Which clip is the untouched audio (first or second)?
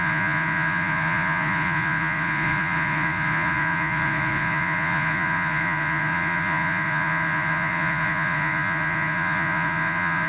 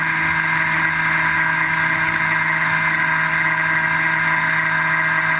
second